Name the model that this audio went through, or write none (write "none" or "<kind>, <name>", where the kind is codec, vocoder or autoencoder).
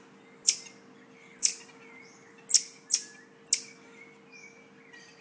none